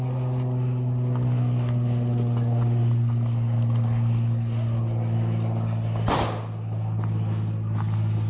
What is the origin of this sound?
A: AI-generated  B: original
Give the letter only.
B